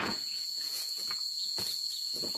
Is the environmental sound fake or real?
fake